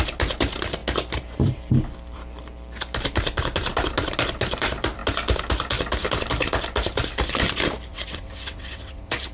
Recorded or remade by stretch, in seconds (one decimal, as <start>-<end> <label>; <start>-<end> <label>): 0.0-7.9 recorded; 7.9-9.3 remade